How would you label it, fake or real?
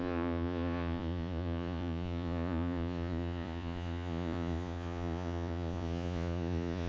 fake